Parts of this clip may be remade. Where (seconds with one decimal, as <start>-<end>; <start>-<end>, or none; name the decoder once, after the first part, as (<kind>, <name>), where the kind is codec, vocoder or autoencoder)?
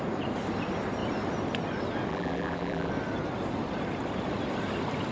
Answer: 2.1-2.9 (vocoder, BigVGAN v2)